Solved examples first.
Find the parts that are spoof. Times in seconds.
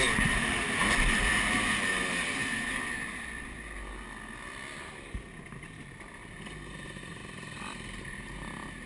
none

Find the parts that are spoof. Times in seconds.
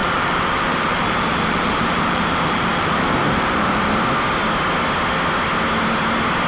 0.0-3.9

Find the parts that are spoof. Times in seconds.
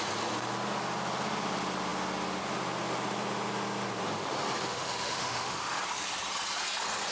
4.6-5.8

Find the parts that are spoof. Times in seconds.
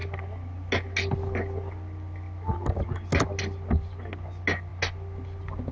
none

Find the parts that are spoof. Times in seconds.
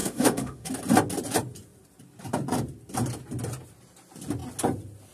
0.0-0.7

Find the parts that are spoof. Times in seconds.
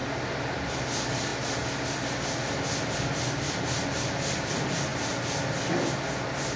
4.9-5.9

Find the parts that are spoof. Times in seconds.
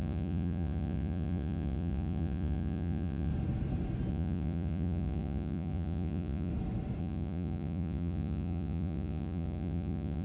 0.0-3.3; 4.1-6.5; 7.0-10.2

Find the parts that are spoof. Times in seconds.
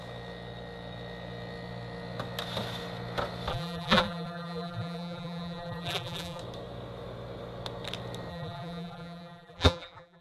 3.5-6.4; 8.3-10.2